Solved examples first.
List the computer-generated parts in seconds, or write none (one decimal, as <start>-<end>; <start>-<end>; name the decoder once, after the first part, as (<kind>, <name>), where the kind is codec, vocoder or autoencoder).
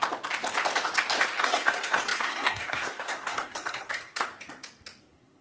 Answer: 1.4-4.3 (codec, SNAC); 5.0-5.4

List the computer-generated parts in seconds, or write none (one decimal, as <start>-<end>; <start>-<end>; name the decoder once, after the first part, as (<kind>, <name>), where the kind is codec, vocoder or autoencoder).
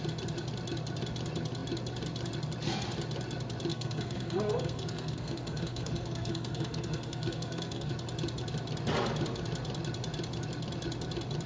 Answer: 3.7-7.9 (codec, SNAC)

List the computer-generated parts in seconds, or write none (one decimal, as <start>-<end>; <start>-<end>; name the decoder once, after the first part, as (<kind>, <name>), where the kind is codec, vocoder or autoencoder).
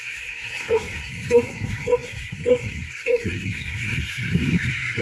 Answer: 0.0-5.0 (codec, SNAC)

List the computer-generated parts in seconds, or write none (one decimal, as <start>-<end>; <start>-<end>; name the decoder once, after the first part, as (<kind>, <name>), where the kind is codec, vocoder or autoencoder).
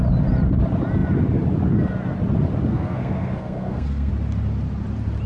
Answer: 2.7-4.1 (codec, SNAC)